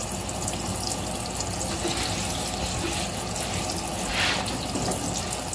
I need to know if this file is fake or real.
real